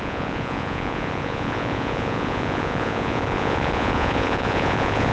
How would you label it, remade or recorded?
remade